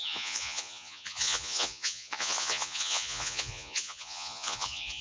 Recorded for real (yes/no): no